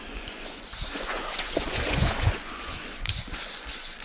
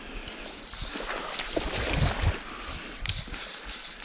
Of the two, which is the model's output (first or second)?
first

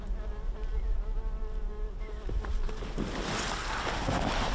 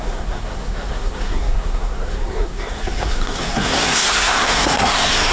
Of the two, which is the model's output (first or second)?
second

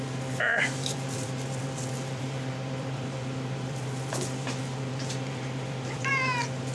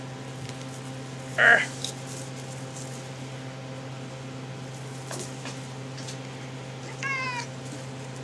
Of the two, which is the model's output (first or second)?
first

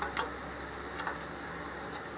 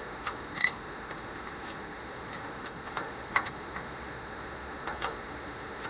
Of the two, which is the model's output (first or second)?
second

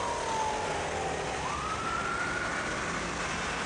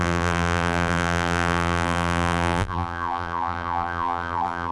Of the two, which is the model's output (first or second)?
second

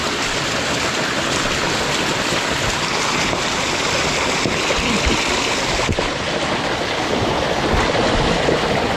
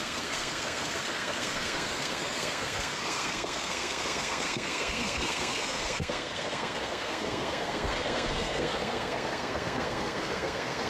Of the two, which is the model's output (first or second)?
second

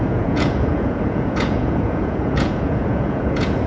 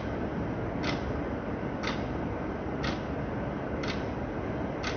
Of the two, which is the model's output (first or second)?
first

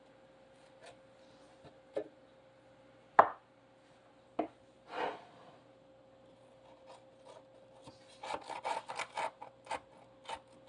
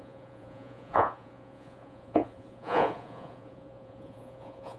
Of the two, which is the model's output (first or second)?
second